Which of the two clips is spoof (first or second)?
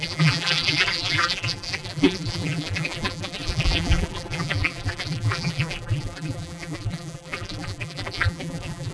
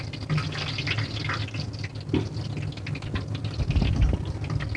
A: first